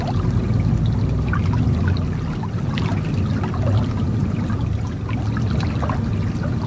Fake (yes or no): no